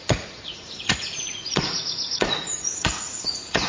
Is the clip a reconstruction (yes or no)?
yes